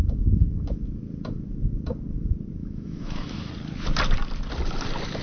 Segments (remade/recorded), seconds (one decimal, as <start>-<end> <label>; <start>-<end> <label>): 0.0-2.6 recorded; 2.6-3.5 remade; 3.5-5.2 recorded